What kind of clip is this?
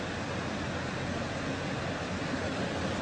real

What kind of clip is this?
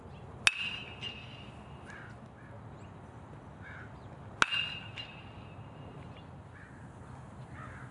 real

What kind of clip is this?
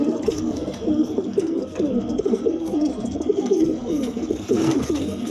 fake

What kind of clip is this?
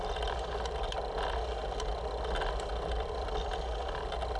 real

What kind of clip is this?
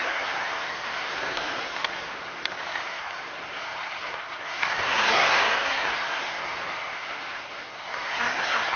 fake